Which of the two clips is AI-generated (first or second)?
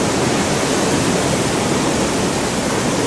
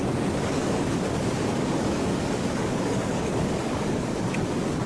second